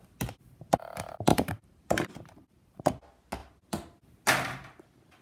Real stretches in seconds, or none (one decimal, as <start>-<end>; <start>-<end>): 0.0-1.3; 2.8-5.2